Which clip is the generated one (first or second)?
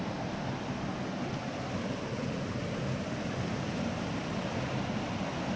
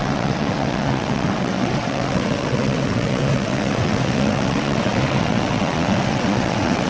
second